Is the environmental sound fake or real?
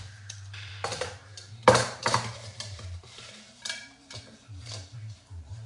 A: fake